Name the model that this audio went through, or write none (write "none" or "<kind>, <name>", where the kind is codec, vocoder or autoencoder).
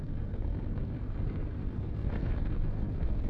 codec, SNAC